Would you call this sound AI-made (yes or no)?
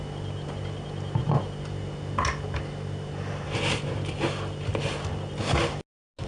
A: no